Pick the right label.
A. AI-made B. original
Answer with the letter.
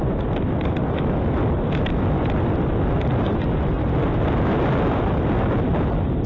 B